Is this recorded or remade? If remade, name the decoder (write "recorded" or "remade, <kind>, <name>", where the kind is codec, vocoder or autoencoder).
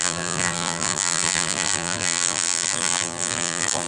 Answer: remade, vocoder, BigVGAN v2